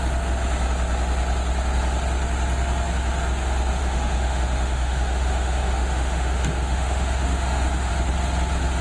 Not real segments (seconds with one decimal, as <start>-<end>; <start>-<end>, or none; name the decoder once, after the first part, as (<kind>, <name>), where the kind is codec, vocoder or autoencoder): 3.8-7.9 (autoencoder, DAC-VAE)